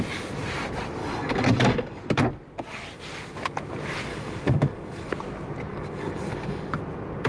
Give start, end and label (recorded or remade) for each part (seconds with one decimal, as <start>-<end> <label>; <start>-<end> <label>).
0.0-1.0 recorded; 1.0-2.0 remade; 2.0-4.1 recorded; 4.1-5.1 remade; 5.1-5.7 recorded; 5.7-6.8 remade; 6.8-7.3 recorded